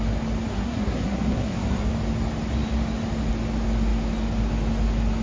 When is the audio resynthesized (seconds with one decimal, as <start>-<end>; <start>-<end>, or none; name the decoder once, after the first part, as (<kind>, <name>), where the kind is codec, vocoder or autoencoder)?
0.5-1.9 (codec, SNAC)